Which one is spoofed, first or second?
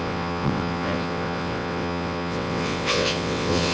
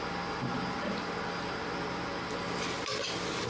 first